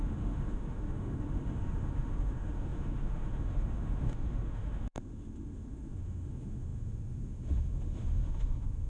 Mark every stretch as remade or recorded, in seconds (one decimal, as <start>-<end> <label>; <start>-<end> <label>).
0.0-8.9 remade